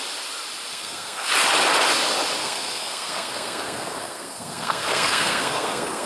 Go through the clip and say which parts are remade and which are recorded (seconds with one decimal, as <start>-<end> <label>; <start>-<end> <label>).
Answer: 0.0-0.7 recorded; 0.7-1.3 remade; 1.3-2.4 recorded; 2.4-6.1 remade